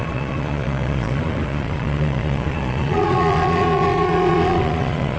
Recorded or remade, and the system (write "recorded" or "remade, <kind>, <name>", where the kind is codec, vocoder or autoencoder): remade, vocoder, Vocos